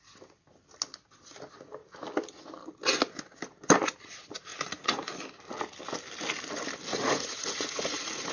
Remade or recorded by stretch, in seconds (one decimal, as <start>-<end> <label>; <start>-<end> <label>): 0.0-4.5 recorded; 4.5-5.1 remade; 5.1-6.9 recorded; 6.9-8.3 remade